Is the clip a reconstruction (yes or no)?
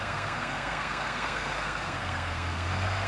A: yes